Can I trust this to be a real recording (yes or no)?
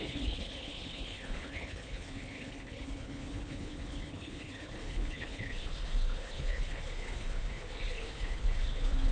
no